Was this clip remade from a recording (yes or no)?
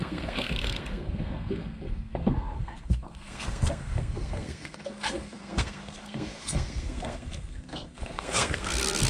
yes